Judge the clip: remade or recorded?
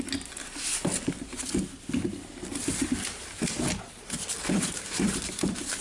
recorded